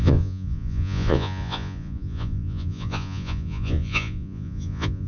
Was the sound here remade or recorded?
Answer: remade